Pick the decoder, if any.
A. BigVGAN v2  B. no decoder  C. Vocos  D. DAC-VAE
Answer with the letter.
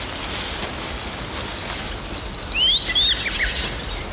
B